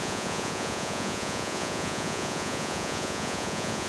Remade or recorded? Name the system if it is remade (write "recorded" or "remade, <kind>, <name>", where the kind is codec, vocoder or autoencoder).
remade, vocoder, Vocos